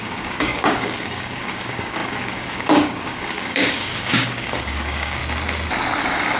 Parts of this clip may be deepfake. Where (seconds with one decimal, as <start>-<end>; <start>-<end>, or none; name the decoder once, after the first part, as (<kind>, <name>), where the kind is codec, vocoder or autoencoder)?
0.0-5.2 (codec, DAC); 6.0-6.4